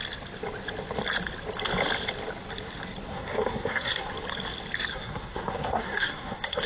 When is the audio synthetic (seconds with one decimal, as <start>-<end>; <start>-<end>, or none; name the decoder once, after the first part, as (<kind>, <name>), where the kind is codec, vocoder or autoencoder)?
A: 3.1-4.1 (codec, SNAC); 4.9-6.7